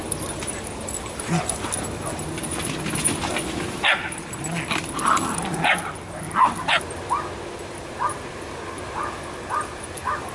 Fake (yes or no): no